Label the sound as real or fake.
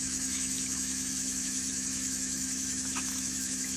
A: fake